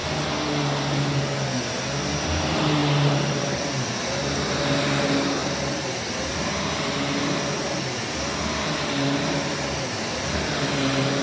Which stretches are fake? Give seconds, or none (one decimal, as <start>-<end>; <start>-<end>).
none